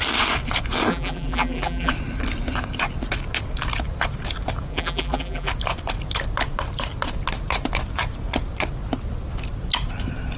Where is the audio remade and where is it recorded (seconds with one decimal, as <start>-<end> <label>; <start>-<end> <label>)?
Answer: 0.0-0.9 recorded; 0.9-1.9 remade; 1.9-4.7 recorded; 4.7-5.5 remade; 5.5-10.4 recorded